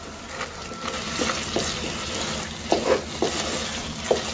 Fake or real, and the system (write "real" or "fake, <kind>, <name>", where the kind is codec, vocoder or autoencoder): real